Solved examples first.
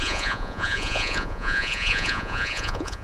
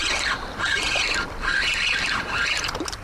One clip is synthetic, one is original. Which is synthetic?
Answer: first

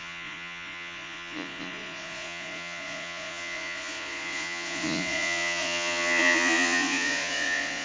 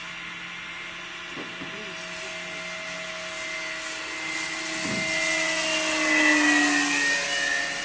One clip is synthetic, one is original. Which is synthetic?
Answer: first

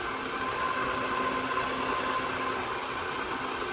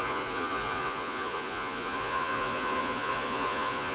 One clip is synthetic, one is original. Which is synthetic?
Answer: second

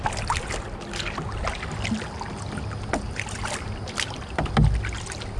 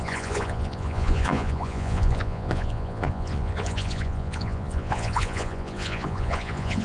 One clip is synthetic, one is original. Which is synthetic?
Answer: second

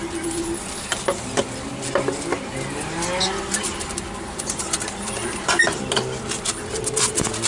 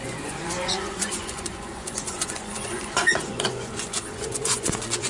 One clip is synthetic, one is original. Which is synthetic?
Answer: second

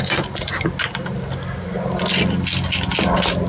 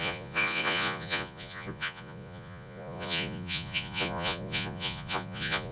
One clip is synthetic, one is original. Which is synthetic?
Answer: second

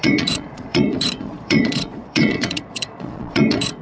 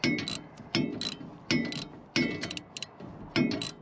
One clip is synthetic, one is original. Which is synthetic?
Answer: first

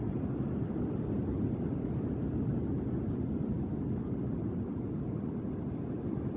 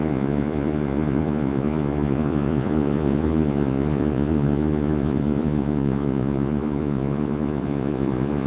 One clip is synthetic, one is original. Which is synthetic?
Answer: second